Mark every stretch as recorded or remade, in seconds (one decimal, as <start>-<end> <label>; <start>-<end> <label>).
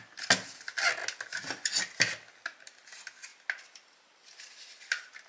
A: 0.0-5.3 recorded